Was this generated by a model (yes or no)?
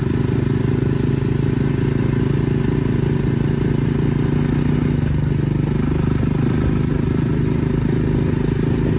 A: no